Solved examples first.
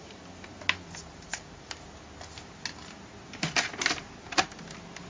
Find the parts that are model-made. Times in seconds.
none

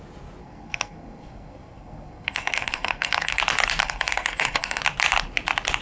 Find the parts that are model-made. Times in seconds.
0.4-3.4 (codec, SNAC); 3.8-4.8

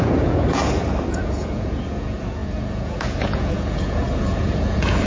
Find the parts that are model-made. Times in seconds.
0.0-0.6 (vocoder, Vocos); 1.1-5.1